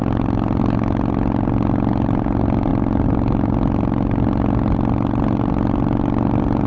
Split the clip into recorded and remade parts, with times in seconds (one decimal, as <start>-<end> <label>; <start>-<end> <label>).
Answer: 0.0-6.7 recorded